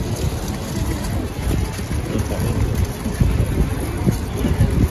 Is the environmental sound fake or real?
real